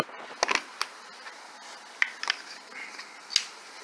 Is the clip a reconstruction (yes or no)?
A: no